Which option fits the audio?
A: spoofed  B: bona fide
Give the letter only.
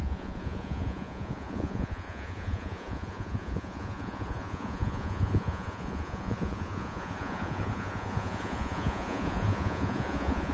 A